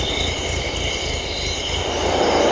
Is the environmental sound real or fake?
real